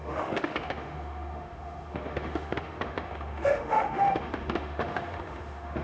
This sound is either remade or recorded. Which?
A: remade